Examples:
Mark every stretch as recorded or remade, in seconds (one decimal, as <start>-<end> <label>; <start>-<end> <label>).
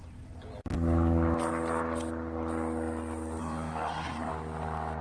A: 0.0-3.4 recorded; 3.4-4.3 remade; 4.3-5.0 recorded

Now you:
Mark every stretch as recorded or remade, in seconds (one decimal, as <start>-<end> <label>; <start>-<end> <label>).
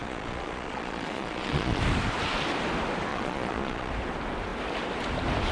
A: 0.0-1.8 remade; 1.8-3.1 recorded; 3.1-3.9 remade; 3.9-5.5 recorded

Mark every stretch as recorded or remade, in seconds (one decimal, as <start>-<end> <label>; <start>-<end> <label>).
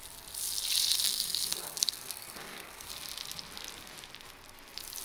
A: 0.0-1.1 recorded; 1.1-2.9 remade; 2.9-5.0 recorded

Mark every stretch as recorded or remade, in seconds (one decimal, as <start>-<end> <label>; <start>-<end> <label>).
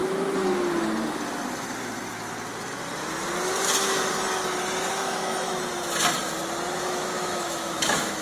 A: 0.0-4.9 recorded; 4.9-5.5 remade; 5.5-6.8 recorded; 6.8-8.2 remade